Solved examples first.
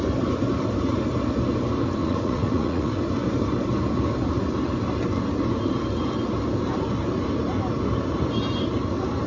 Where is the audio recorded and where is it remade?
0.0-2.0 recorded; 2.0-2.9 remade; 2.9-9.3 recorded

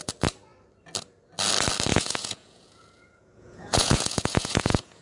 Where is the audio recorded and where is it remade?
0.0-1.9 recorded; 1.9-5.0 remade

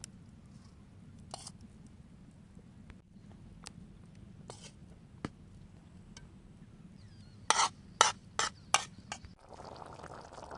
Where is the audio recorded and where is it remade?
0.0-10.6 recorded

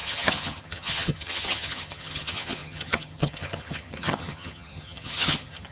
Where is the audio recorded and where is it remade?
0.0-5.7 remade